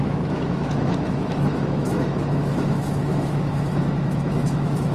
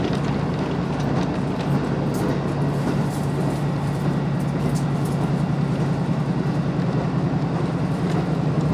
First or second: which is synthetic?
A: first